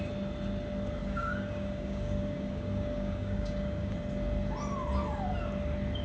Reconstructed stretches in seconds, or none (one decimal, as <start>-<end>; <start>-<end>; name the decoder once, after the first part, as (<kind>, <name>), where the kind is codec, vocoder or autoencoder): 1.0-3.9 (codec, DAC)